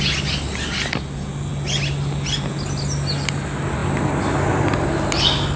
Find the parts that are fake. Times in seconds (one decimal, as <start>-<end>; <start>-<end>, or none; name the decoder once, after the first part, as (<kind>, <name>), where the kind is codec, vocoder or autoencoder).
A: none